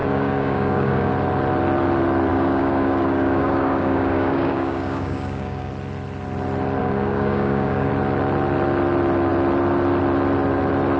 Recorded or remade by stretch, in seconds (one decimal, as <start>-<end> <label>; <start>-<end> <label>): 0.0-1.1 remade; 1.1-2.3 recorded; 2.3-5.7 remade; 5.7-6.8 recorded; 6.8-7.9 remade; 7.9-11.0 recorded